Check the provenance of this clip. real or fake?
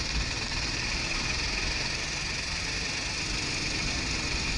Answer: real